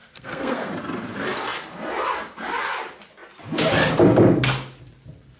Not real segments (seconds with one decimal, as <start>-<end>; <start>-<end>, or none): 0.0-0.7

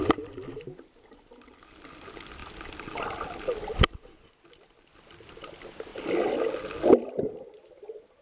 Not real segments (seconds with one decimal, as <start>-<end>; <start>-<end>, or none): 0.0-2.4; 4.4-5.9; 6.8-8.2